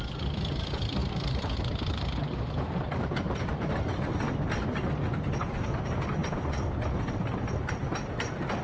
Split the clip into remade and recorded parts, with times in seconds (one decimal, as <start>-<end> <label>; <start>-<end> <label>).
0.0-1.0 recorded; 1.0-3.9 remade; 3.9-8.6 recorded